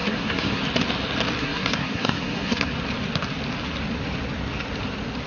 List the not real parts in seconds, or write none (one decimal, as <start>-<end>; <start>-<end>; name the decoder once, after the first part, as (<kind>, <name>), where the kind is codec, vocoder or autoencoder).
0.0-0.6 (codec, SNAC); 1.4-2.7